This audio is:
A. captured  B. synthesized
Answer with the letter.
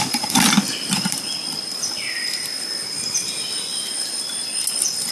A